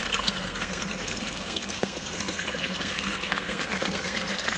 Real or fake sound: fake